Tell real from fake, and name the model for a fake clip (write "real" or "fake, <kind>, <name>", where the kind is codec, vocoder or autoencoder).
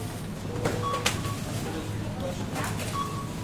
real